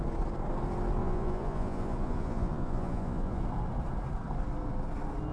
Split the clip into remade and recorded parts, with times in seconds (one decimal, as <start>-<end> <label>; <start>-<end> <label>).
0.0-1.0 recorded; 1.0-3.4 remade; 3.4-5.3 recorded